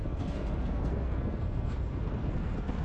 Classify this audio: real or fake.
fake